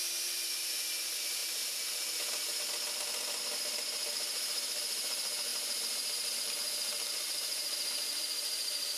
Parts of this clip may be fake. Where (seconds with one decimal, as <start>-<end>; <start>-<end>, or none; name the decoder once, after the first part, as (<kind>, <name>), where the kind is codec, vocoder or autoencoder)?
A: 0.0-1.4 (vocoder, BigVGAN v2); 3.4-9.0